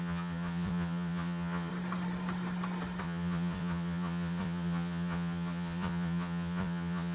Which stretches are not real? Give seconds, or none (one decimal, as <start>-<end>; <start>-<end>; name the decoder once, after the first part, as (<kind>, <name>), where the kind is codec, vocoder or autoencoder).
0.0-1.7 (vocoder, Vocos); 3.0-7.1